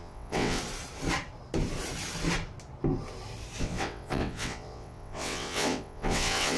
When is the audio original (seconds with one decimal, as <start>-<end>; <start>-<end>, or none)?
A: 0.6-3.6